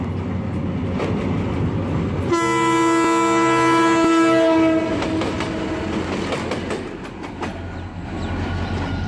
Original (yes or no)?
yes